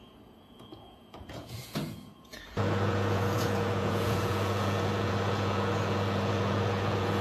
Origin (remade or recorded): remade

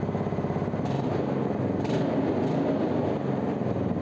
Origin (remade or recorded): recorded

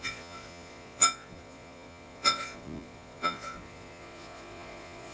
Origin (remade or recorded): remade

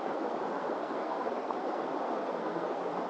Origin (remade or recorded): remade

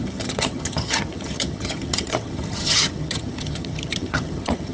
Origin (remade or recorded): remade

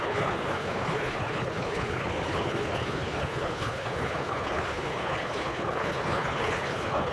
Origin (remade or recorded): remade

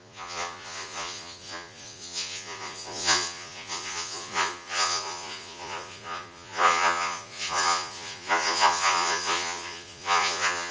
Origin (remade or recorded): remade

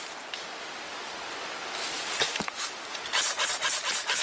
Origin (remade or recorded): recorded